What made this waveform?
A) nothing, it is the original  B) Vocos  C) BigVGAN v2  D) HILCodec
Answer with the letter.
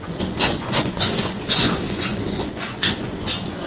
B